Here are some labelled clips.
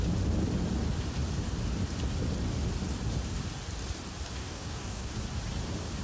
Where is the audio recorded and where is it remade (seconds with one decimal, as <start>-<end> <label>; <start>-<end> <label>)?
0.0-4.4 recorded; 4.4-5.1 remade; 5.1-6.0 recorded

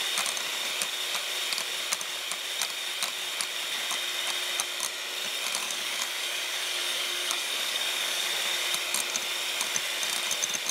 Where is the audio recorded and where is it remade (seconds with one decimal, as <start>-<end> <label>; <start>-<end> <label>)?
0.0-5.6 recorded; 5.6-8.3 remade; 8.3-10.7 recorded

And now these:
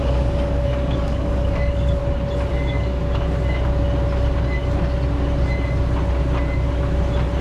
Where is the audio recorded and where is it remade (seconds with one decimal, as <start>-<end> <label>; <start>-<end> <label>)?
0.0-2.0 remade; 2.0-2.5 recorded; 2.5-3.0 remade; 3.0-7.4 recorded

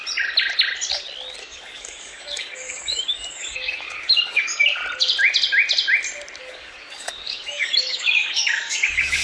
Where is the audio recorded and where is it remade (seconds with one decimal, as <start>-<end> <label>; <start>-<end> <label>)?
0.0-1.4 recorded; 1.4-4.8 remade; 4.8-6.4 recorded; 6.4-9.2 remade